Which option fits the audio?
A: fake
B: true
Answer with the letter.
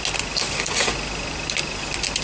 B